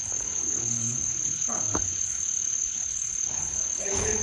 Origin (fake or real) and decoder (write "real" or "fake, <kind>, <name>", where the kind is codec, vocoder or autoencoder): fake, codec, HILCodec